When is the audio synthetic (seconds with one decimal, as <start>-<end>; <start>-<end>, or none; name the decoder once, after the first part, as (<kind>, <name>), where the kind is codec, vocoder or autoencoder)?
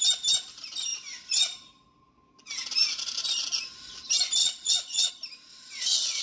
4.4-5.1 (vocoder, WaveNeXt); 5.5-6.2